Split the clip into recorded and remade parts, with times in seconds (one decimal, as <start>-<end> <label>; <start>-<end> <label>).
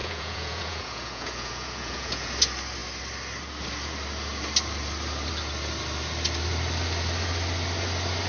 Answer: 0.0-2.3 remade; 2.3-8.3 recorded